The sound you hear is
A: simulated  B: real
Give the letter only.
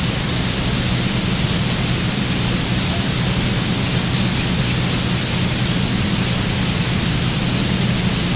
B